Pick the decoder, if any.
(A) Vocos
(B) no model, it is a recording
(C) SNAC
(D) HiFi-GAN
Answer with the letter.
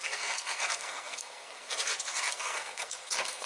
C